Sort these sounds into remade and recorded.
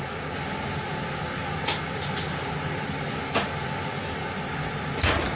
recorded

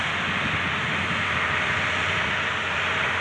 remade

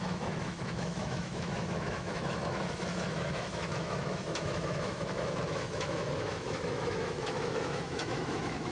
remade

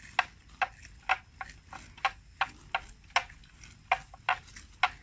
recorded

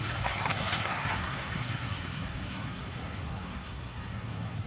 remade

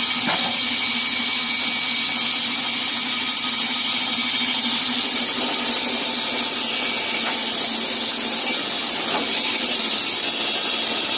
recorded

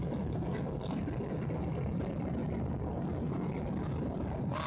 recorded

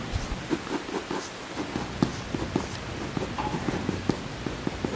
recorded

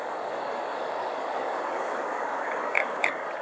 remade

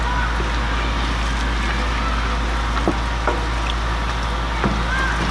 recorded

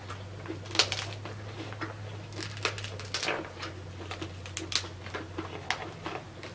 recorded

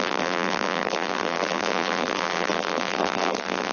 remade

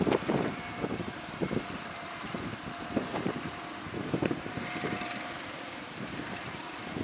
remade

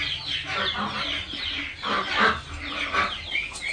recorded